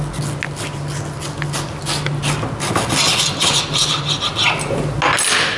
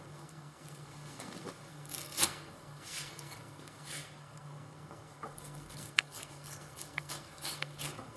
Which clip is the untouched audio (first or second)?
first